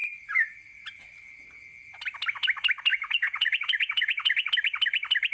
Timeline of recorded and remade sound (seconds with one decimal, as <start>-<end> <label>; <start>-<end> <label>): 0.0-2.9 recorded; 2.9-4.5 remade; 4.5-5.3 recorded